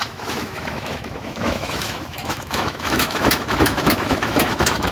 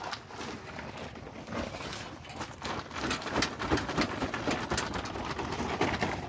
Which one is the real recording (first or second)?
second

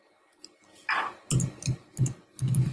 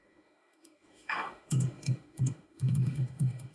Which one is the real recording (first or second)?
first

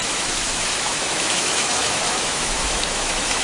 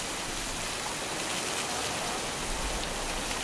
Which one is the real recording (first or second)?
second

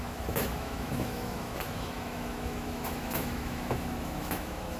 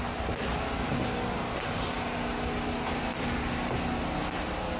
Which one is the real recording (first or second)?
second